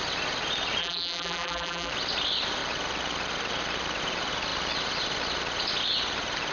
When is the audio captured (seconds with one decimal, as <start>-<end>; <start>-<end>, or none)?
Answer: 0.0-0.8; 1.9-6.5